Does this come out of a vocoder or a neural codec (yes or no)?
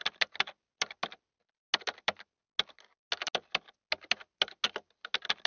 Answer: no